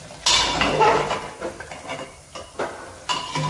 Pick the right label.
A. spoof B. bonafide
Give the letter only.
B